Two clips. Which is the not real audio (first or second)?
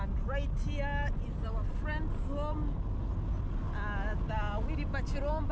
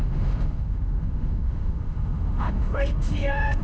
second